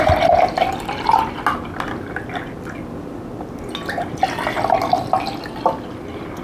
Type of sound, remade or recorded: recorded